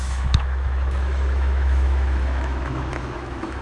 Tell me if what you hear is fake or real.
fake